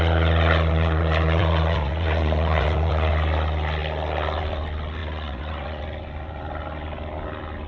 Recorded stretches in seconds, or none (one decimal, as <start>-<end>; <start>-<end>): 0.0-0.7; 3.1-5.0; 5.8-7.7